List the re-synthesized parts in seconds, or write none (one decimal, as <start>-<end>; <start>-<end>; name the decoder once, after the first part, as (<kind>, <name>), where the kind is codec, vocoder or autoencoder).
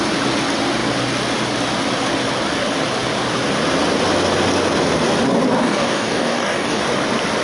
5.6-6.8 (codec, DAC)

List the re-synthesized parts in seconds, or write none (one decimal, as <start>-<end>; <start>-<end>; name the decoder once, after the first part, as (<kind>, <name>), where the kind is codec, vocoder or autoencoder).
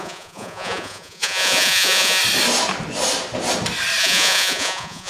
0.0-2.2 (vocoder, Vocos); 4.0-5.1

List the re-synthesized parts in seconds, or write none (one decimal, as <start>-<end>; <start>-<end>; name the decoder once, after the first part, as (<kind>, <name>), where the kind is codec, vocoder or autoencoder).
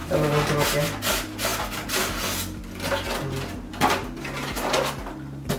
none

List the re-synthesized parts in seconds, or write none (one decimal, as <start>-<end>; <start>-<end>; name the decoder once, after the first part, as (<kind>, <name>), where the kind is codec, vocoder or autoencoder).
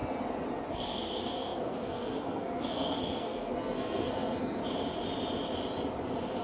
0.7-4.6 (codec, SNAC)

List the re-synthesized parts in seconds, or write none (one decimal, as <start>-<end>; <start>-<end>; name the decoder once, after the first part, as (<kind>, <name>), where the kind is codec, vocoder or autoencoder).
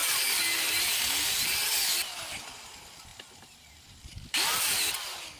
3.1-4.6 (vocoder, BigVGAN v2)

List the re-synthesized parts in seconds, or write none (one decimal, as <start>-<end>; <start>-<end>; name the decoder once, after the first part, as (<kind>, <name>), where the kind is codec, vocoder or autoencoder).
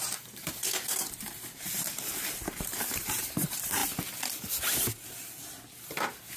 0.0-3.8 (vocoder, BigVGAN v2)